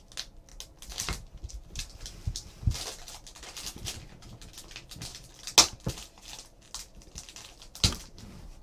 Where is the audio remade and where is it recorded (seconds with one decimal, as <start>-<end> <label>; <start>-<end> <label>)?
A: 0.0-8.6 recorded